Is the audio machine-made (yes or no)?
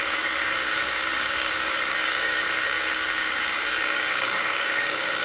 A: yes